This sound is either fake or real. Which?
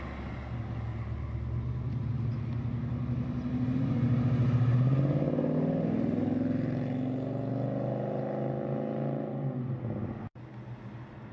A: real